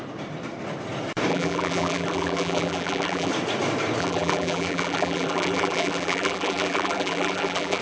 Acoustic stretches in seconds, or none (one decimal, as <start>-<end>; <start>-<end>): 0.0-1.3; 3.3-4.0